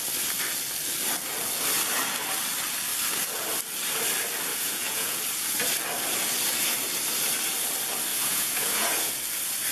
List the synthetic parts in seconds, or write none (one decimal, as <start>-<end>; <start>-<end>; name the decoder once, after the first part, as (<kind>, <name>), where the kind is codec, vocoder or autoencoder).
4.5-5.2 (vocoder, Vocos); 8.1-9.1